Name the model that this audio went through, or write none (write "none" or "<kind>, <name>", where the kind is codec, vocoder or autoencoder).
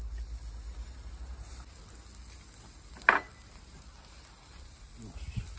none